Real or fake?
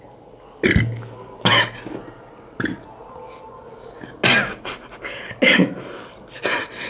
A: real